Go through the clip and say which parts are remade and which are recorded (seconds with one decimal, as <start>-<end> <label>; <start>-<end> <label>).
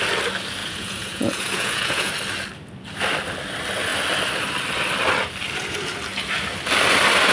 0.0-0.6 recorded; 0.6-2.1 remade; 2.1-7.3 recorded